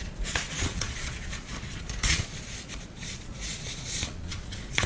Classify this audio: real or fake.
fake